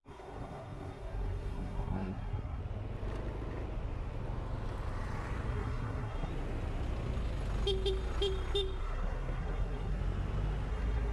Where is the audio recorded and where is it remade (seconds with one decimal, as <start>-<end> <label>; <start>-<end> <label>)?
0.0-2.6 remade; 2.6-5.5 recorded; 5.5-6.3 remade; 6.3-8.8 recorded; 8.8-10.0 remade; 10.0-10.7 recorded; 10.7-11.1 remade